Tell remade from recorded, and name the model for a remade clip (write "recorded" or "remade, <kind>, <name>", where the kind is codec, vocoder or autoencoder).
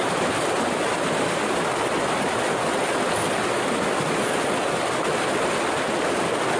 recorded